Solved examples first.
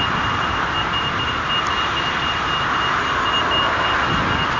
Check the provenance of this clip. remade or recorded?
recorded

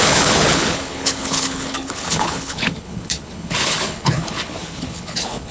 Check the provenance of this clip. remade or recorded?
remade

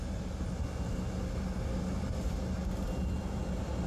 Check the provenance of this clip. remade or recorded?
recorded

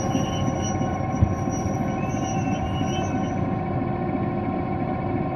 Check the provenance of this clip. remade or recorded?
recorded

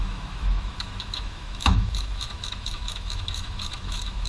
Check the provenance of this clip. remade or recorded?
remade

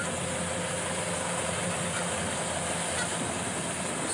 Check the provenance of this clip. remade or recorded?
recorded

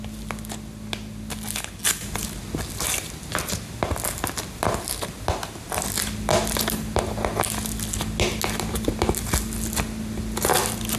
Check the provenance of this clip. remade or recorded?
recorded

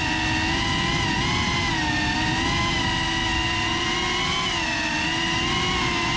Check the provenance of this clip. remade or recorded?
recorded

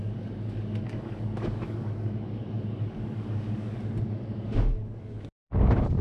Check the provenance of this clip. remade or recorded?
remade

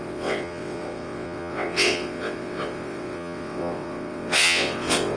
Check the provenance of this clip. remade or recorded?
remade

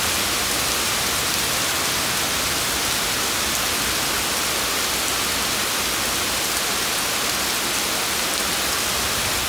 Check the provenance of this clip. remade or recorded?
recorded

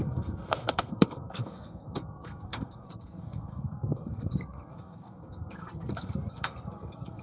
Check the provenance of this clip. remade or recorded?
remade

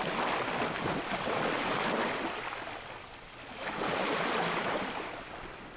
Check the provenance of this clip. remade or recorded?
recorded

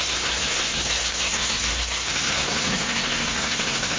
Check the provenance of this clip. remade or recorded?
remade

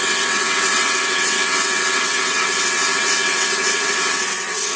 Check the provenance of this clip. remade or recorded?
remade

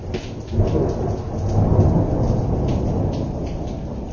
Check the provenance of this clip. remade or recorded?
recorded